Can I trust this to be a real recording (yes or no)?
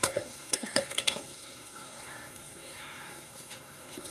no